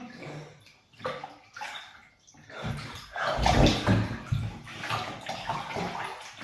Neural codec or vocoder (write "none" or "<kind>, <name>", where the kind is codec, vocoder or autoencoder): none